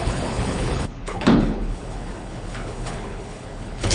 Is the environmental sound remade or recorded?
remade